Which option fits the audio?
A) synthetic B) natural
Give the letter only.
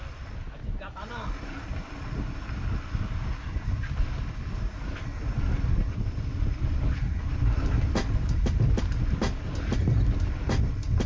B